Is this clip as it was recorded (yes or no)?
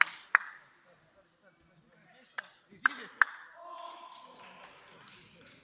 yes